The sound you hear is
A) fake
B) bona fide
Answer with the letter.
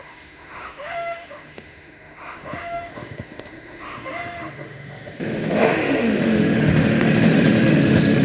A